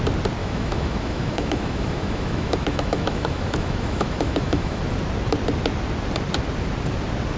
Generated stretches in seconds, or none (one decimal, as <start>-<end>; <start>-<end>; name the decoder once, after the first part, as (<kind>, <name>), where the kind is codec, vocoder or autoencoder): 0.4-4.8 (autoencoder, DAC-VAE)